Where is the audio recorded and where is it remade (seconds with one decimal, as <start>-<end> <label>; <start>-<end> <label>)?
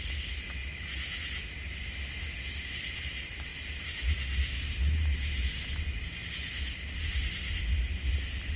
0.0-8.6 recorded